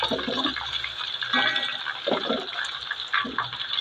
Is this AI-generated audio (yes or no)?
no